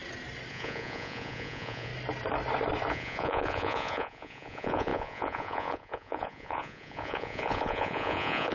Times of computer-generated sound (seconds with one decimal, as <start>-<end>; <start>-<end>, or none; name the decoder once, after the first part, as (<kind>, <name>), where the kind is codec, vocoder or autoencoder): 0.5-1.9 (vocoder, Vocos); 2.9-8.5